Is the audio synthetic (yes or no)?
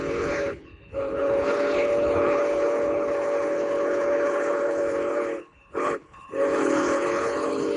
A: yes